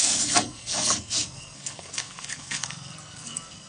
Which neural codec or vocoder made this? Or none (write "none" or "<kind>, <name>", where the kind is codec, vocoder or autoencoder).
codec, SNAC